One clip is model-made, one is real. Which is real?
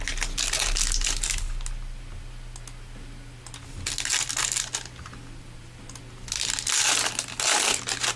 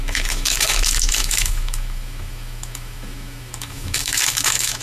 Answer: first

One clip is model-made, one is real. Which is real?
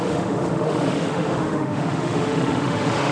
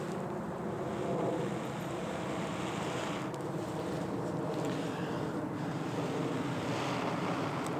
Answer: second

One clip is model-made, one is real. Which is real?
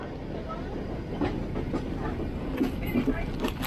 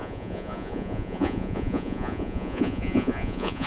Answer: first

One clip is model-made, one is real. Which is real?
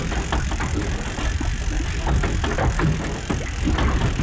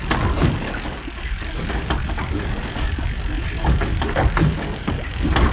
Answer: first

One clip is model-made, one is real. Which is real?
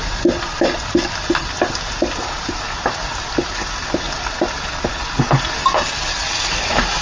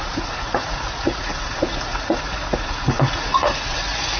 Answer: first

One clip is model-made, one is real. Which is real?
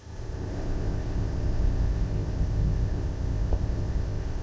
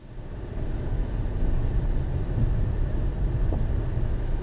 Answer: second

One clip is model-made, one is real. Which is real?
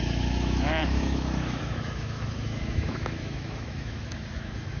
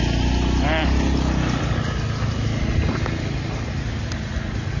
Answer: second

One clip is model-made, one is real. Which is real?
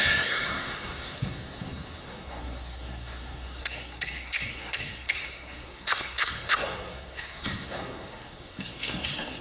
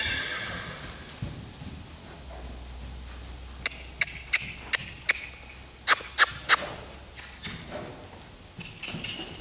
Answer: second